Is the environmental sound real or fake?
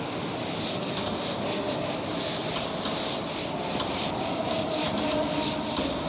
real